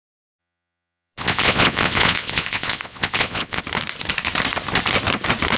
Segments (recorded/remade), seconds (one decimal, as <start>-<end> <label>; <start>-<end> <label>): 0.0-0.4 recorded; 0.4-3.6 remade; 3.6-5.6 recorded